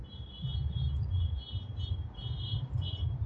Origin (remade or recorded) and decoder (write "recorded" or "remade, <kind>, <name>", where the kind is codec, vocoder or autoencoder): recorded